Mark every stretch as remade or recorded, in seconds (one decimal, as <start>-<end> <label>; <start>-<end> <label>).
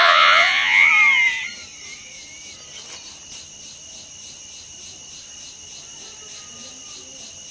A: 0.0-0.9 remade; 0.9-7.5 recorded